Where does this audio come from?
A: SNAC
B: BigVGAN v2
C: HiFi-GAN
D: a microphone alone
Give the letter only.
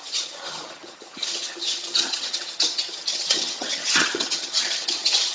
C